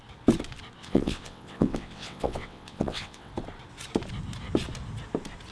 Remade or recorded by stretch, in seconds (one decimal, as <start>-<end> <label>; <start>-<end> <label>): 0.0-0.8 recorded; 0.8-3.3 remade; 3.3-5.5 recorded